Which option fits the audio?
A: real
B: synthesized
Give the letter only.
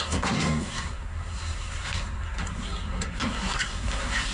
B